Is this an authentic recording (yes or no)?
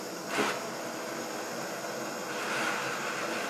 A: yes